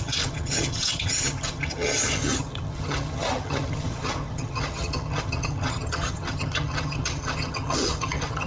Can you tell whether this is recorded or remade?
remade